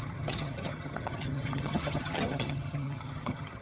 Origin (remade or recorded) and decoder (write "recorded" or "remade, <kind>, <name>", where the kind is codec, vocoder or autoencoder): remade, vocoder, HiFi-GAN